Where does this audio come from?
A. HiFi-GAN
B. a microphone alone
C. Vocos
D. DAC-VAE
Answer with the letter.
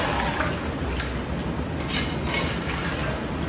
B